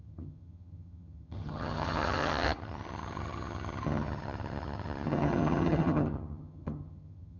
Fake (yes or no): yes